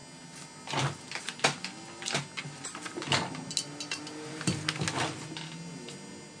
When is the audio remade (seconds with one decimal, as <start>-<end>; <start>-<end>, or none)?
none